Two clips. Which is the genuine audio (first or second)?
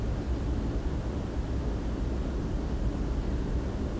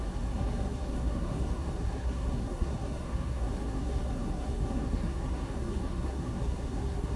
first